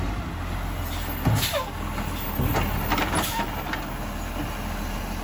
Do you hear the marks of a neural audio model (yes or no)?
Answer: no